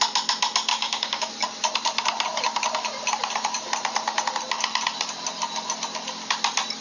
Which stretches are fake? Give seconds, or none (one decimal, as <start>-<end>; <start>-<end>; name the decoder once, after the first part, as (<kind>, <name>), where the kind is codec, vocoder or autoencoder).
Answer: 0.7-1.3 (codec, DAC)